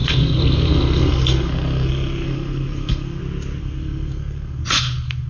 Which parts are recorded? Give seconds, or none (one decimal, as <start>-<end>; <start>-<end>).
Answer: 3.2-3.6